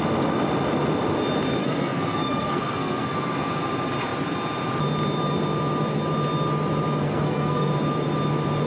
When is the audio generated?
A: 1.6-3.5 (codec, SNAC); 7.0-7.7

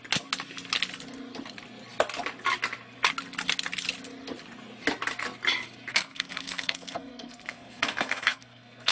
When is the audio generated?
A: 5.9-8.9 (codec, SNAC)